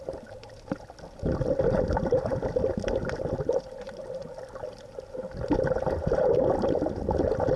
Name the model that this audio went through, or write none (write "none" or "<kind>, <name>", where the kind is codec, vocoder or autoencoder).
none